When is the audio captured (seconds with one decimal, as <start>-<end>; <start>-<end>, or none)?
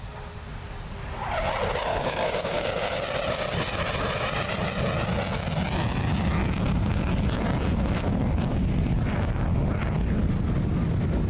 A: 0.0-1.9; 2.9-11.3